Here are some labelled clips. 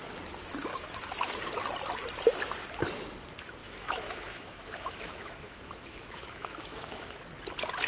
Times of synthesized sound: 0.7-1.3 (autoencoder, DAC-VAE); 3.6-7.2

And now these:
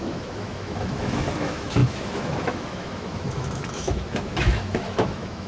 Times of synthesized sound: 0.0-5.5 (autoencoder, DAC-VAE)

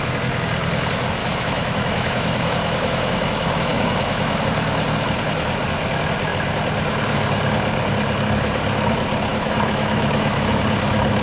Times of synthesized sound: 1.2-4.4 (autoencoder, DAC-VAE); 9.3-10.6